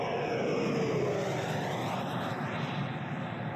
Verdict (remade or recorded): recorded